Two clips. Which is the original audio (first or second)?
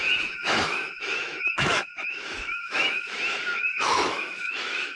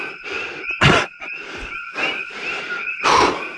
second